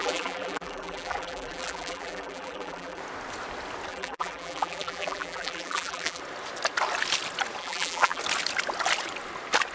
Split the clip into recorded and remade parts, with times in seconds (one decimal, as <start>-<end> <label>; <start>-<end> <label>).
0.0-3.0 remade; 3.0-3.9 recorded; 3.9-6.2 remade; 6.2-7.6 recorded; 7.6-8.2 remade; 8.2-9.7 recorded

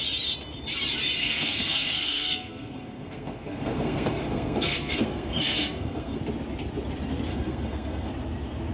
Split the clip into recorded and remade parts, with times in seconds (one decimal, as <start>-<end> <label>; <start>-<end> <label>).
0.0-1.2 recorded; 1.2-6.2 remade; 6.2-7.3 recorded; 7.3-8.1 remade; 8.1-8.7 recorded

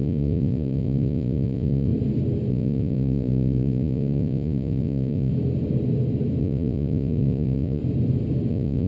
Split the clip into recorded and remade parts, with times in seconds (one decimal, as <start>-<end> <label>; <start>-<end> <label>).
0.0-1.9 remade; 1.9-2.5 recorded; 2.5-5.3 remade; 5.3-6.4 recorded; 6.4-7.8 remade; 7.8-8.5 recorded; 8.5-8.9 remade

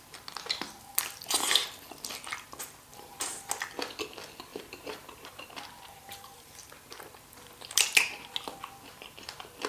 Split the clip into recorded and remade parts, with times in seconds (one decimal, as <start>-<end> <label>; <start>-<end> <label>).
0.0-2.9 recorded; 2.9-3.5 remade; 3.5-4.5 recorded; 4.5-5.5 remade; 5.5-5.9 recorded; 5.9-6.6 remade; 6.6-9.7 recorded

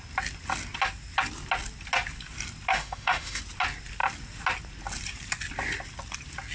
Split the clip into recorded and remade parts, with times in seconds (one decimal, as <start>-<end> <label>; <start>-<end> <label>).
0.0-2.7 recorded; 2.7-3.4 remade; 3.4-6.5 recorded

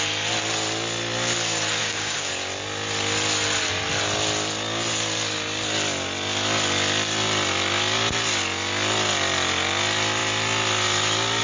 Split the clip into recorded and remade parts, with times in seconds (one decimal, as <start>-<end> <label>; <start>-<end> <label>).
0.0-1.8 recorded; 1.8-2.3 remade; 2.3-11.4 recorded

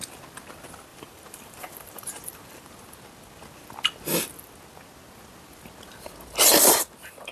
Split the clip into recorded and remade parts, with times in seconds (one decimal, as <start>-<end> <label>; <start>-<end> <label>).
0.0-0.9 recorded; 0.9-2.7 remade; 2.7-7.3 recorded